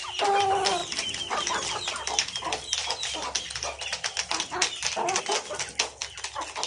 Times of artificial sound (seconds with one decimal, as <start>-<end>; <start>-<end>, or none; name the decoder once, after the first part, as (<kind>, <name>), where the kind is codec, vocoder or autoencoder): none